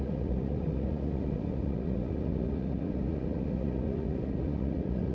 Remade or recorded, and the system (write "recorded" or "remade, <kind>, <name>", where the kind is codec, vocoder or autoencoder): remade, vocoder, Vocos